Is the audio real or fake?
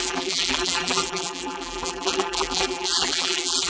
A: fake